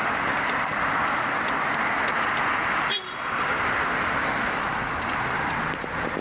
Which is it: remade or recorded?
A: recorded